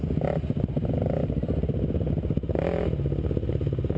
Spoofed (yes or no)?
no